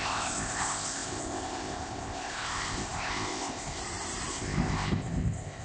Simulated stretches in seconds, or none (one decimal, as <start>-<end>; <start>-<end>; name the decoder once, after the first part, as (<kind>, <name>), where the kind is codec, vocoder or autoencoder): 0.0-3.8 (codec, ZipCodec); 4.3-5.6